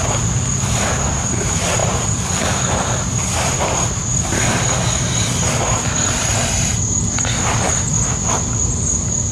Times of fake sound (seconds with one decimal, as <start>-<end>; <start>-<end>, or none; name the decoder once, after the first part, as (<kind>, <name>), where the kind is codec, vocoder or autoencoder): 1.8-3.9 (vocoder, BigVGAN v2); 6.3-7.4

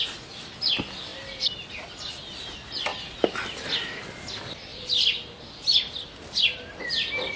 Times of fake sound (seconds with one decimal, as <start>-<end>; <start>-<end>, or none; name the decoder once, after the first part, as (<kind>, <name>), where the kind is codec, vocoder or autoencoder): 1.1-1.7 (vocoder, BigVGAN v2); 4.7-5.4